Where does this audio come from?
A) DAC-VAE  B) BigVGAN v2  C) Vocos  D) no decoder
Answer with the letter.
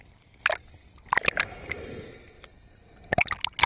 D